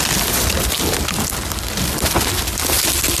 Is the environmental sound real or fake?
real